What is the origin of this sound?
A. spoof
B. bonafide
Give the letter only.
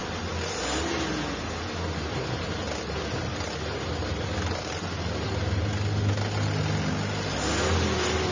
B